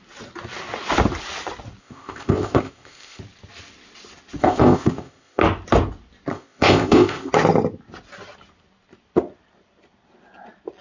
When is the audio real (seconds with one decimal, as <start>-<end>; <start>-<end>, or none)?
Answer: 0.0-1.8; 3.2-4.4; 5.4-6.3; 7.3-10.8